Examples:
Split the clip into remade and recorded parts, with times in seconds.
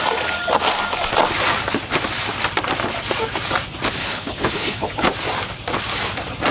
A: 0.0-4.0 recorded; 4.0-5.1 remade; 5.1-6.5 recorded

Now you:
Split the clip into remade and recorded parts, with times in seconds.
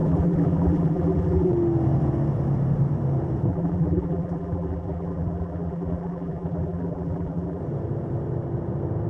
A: 0.0-1.5 remade; 1.5-3.5 recorded; 3.5-7.6 remade; 7.6-9.1 recorded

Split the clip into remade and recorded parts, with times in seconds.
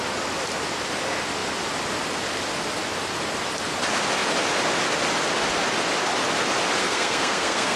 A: 0.0-6.8 recorded; 6.8-7.8 remade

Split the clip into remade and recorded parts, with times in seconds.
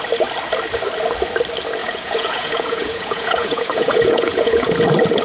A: 0.0-1.8 recorded; 1.8-4.7 remade; 4.7-5.2 recorded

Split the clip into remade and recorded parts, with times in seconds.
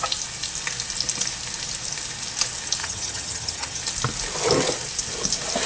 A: 0.0-2.8 recorded; 2.8-3.8 remade; 3.8-5.7 recorded